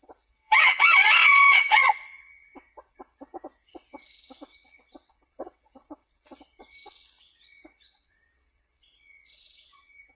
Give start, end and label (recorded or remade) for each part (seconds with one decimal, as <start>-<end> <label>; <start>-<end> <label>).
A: 0.0-10.2 remade